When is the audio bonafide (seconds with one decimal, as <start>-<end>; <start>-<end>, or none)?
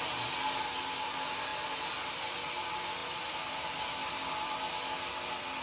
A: 0.0-5.6